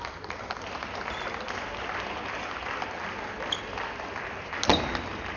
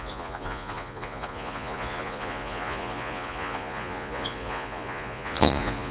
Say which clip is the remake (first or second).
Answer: second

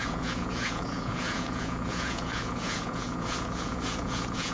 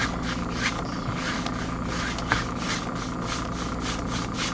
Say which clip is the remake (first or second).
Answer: first